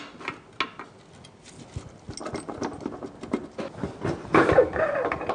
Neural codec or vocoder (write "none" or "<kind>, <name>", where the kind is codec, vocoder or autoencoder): none